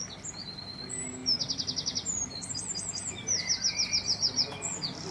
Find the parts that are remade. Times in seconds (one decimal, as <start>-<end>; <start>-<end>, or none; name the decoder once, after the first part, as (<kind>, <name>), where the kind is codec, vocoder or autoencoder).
none